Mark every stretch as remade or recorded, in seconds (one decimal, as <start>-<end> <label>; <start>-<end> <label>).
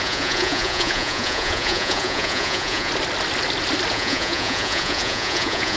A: 0.0-2.9 remade; 2.9-3.9 recorded; 3.9-5.8 remade